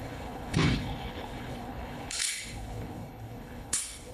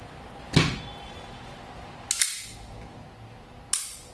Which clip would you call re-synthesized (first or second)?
first